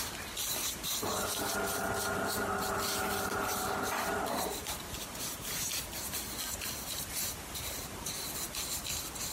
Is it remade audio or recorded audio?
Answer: recorded